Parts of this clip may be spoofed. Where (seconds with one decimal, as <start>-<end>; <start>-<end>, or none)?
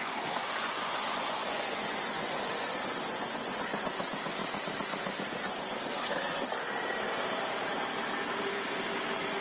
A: 0.0-4.4